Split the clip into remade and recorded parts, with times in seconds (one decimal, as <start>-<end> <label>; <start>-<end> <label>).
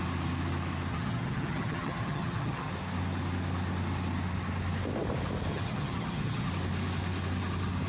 0.0-0.9 recorded; 0.9-2.7 remade; 2.7-5.5 recorded; 5.5-6.5 remade; 6.5-7.9 recorded